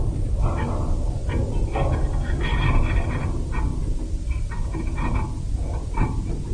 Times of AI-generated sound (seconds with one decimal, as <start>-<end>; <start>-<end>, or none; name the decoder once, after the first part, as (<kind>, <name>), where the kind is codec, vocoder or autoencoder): 2.5-3.1 (vocoder, BigVGAN v2); 3.7-6.5